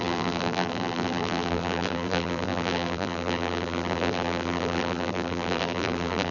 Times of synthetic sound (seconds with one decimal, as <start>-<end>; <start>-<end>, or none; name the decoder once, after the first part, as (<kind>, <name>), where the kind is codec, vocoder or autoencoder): 0.0-6.3 (vocoder, BigVGAN v2)